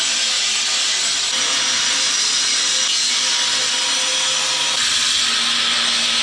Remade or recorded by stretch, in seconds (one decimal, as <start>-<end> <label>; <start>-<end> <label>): 0.0-6.2 recorded

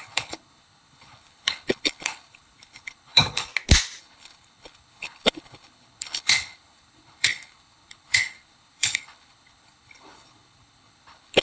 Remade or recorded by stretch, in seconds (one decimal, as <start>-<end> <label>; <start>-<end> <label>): 0.0-3.5 remade; 3.5-4.0 recorded; 4.0-11.4 remade

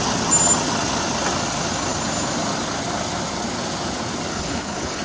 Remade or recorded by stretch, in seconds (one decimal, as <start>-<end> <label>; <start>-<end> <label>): 0.0-4.3 recorded; 4.3-5.0 remade

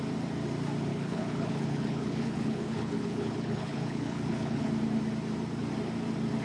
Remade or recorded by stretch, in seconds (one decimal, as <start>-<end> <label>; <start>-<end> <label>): 0.0-0.9 recorded; 0.9-4.7 remade; 4.7-6.4 recorded

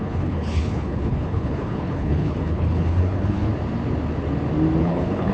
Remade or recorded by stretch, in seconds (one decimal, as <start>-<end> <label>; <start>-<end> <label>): 0.0-3.5 remade; 3.5-4.8 recorded; 4.8-5.3 remade

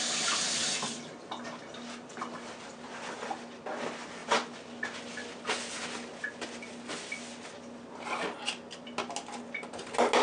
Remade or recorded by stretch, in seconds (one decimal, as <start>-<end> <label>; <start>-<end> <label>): 0.0-10.2 recorded

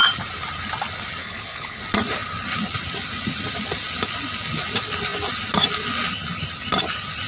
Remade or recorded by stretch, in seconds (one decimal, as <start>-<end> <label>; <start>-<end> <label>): 0.0-1.2 recorded; 1.2-1.8 remade; 1.8-7.3 recorded